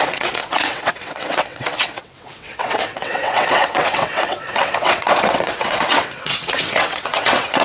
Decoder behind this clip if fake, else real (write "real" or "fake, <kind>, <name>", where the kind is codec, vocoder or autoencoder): fake, vocoder, WaveNeXt